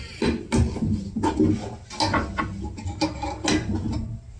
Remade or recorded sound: recorded